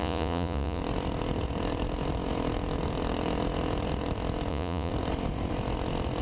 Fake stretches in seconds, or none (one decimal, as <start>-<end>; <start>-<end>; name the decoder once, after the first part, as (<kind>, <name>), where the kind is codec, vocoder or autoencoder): 0.0-0.8 (vocoder, Vocos); 4.5-4.9